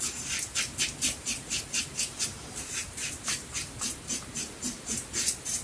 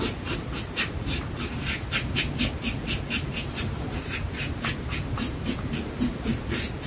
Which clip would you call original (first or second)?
second